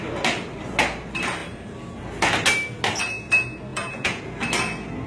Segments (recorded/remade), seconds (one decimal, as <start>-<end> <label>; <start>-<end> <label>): 0.0-3.7 recorded; 3.7-4.2 remade; 4.2-5.1 recorded